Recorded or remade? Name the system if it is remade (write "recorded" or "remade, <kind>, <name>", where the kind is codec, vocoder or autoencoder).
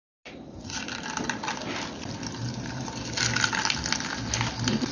recorded